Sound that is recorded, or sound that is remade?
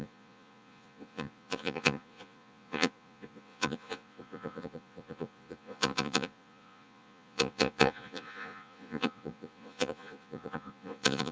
remade